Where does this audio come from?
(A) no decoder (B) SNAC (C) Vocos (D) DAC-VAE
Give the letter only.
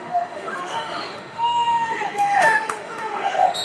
D